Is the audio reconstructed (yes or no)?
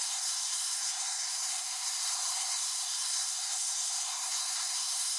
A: yes